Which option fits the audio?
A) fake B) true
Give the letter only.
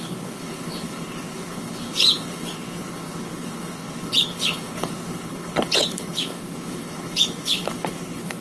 A